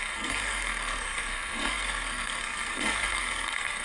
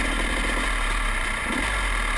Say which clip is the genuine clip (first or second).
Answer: second